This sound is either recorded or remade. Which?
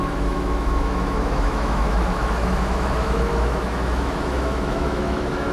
remade